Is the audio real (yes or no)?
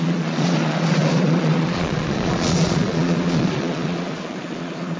no